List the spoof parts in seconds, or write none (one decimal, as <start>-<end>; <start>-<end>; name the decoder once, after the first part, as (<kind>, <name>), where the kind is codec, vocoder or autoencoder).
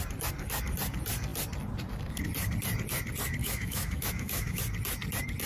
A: 3.4-4.6 (autoencoder, DAC-VAE)